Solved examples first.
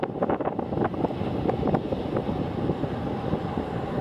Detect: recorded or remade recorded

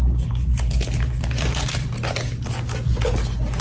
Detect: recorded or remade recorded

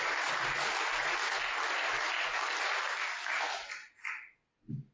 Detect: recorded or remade recorded